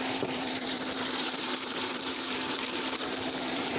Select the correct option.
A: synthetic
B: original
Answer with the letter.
A